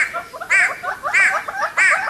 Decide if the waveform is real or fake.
real